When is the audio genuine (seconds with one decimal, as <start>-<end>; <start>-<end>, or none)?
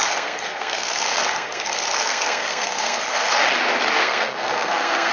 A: 3.0-4.0